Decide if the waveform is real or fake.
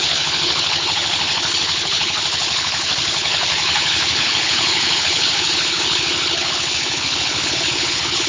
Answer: fake